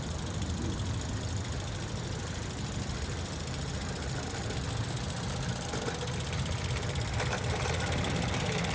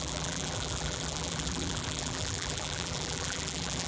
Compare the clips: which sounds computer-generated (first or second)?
second